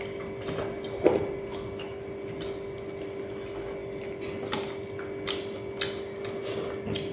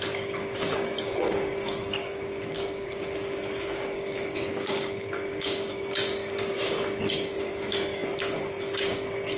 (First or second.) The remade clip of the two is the second